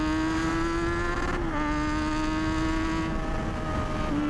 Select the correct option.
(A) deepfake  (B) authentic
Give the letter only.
B